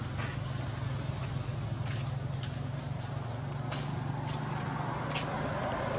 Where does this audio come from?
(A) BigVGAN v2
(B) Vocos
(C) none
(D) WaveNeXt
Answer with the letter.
C